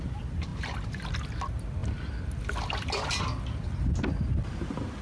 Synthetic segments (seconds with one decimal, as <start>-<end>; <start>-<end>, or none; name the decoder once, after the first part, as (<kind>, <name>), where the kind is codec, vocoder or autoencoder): none